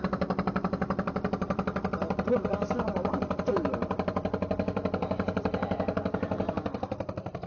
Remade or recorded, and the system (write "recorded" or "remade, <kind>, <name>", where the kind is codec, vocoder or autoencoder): remade, vocoder, BigVGAN v2